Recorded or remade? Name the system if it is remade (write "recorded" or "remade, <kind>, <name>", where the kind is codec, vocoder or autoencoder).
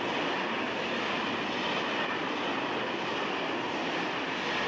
recorded